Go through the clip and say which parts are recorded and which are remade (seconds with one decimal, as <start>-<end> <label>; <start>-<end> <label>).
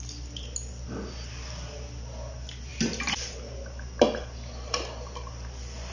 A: 0.0-5.9 recorded